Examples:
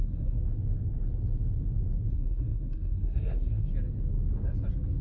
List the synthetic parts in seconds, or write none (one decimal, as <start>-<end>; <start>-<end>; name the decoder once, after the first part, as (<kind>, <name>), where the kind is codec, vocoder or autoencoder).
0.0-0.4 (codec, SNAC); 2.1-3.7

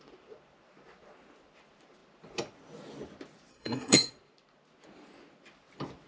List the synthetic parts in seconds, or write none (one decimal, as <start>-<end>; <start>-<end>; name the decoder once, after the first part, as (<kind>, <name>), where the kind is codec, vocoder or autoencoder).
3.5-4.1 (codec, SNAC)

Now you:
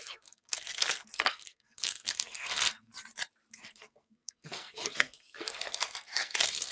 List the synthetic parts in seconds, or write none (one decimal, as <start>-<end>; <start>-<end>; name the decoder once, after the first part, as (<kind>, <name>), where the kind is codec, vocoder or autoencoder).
0.0-2.9 (codec, SNAC); 3.5-6.7

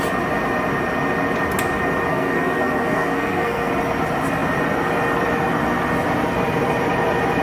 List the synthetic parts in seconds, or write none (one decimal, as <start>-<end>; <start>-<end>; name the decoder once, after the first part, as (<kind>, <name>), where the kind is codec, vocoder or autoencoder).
2.1-3.7 (codec, SNAC)

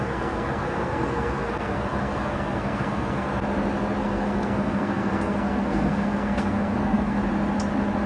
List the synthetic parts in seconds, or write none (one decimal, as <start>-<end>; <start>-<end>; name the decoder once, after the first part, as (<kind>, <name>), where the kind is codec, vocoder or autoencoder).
0.0-3.3 (codec, SNAC); 4.0-7.2

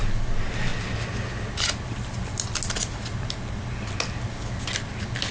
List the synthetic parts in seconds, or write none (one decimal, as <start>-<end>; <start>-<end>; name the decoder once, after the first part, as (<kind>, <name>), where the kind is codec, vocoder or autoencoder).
none